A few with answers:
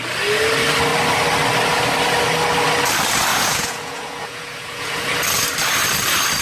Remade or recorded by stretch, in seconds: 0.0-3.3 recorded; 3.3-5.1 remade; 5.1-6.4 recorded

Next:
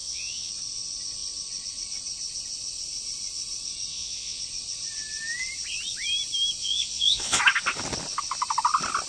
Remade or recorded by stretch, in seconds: 0.0-0.5 remade; 0.5-3.9 recorded; 3.9-4.4 remade; 4.4-6.6 recorded; 6.6-7.4 remade; 7.4-9.1 recorded

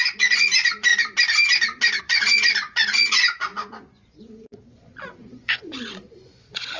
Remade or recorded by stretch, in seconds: 0.0-0.9 remade; 0.9-2.0 recorded; 2.0-6.8 remade